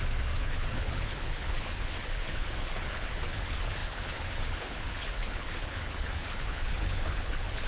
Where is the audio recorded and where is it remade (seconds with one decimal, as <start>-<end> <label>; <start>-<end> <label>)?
0.0-7.7 remade